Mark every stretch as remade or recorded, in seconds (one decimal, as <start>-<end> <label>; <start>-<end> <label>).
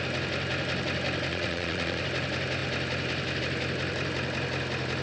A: 0.0-1.3 recorded; 1.3-2.0 remade; 2.0-5.0 recorded